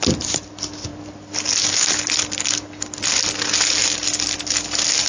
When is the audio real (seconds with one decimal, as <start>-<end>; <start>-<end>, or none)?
0.0-5.1